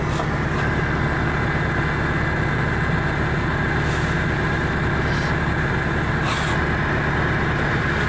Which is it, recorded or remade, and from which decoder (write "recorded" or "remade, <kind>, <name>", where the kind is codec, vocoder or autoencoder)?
recorded